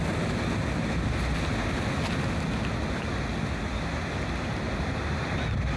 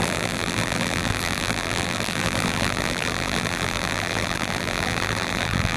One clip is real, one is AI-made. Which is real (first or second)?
first